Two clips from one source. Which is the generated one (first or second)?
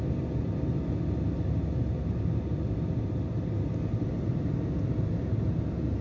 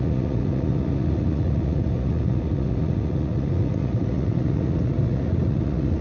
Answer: second